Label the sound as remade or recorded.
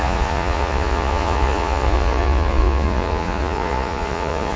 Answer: remade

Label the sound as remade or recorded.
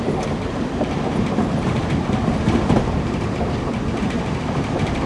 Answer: remade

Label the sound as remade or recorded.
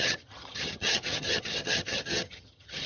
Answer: remade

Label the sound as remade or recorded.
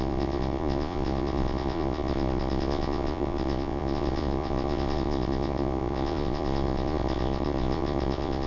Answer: remade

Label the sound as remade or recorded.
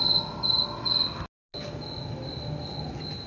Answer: recorded